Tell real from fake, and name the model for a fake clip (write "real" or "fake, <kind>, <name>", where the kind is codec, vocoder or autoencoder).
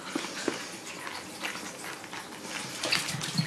real